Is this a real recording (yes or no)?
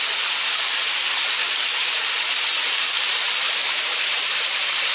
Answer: yes